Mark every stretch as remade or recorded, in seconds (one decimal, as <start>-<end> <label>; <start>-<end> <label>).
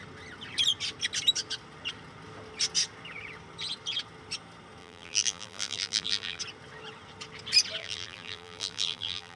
0.0-4.8 recorded; 4.8-6.4 remade; 6.4-7.8 recorded; 7.8-9.4 remade